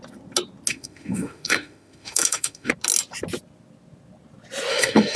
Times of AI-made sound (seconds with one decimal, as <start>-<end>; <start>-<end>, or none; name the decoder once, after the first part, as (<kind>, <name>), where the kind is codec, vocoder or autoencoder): 0.7-2.7 (autoencoder, DAC-VAE); 4.7-5.2

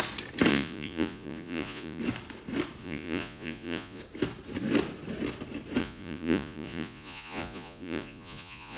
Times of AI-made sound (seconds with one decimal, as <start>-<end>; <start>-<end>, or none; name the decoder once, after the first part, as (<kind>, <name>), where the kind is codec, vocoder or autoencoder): 0.5-2.0 (vocoder, Vocos); 2.8-4.0; 5.8-8.8